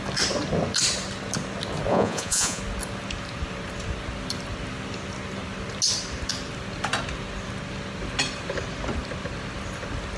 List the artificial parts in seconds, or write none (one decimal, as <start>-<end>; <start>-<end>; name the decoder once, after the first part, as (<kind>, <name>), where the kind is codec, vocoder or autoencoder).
1.9-2.6 (vocoder, Vocos)